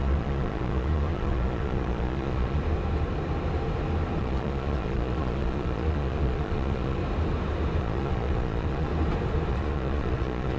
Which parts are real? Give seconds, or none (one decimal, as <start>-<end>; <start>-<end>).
2.6-4.2; 7.0-7.8; 8.9-9.5